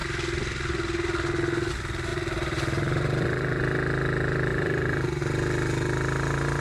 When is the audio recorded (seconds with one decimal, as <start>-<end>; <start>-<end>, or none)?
0.0-2.1; 3.6-4.5; 5.2-6.6